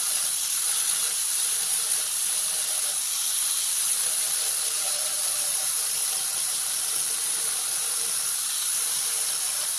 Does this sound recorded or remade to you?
recorded